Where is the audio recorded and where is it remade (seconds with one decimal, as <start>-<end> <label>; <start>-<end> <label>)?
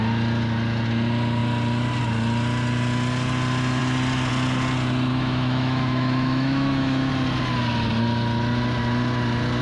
0.0-5.1 recorded; 5.1-7.1 remade; 7.1-9.6 recorded